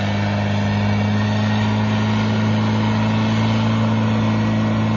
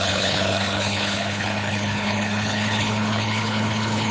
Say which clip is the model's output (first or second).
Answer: second